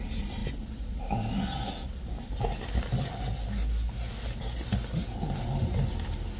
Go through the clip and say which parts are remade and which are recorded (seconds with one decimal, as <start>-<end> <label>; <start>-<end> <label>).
0.0-6.4 recorded